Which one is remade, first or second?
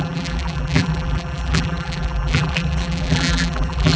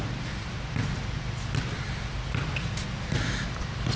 first